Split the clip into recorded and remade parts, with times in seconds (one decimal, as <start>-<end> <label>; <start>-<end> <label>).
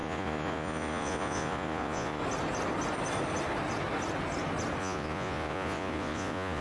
0.0-2.2 remade; 2.2-4.8 recorded; 4.8-6.6 remade